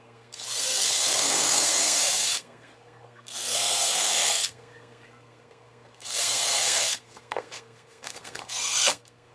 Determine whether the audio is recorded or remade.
remade